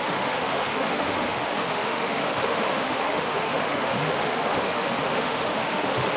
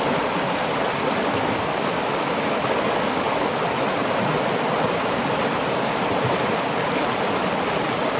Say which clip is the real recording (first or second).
second